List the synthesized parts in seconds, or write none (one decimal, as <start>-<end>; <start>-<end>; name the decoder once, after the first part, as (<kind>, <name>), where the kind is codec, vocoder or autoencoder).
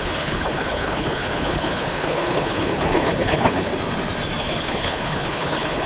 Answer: 0.0-3.7 (codec, HILCodec); 4.4-5.9